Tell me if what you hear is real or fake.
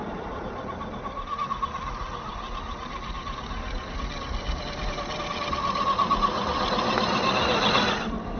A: real